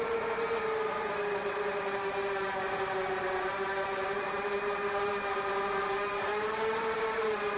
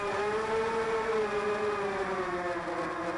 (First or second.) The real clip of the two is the second